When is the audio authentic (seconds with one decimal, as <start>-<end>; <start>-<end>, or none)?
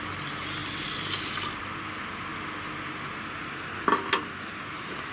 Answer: 0.0-5.1